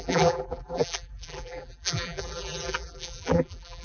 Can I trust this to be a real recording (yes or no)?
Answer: no